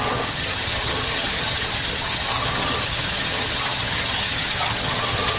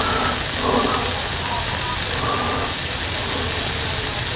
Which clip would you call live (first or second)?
second